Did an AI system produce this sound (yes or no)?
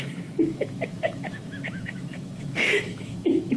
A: yes